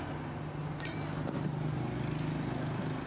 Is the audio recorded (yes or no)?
yes